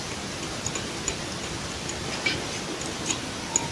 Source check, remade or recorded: recorded